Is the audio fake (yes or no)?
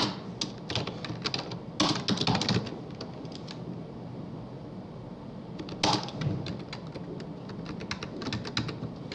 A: no